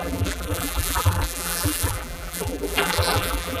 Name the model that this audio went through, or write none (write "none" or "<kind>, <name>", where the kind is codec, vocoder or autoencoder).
vocoder, BigVGAN v2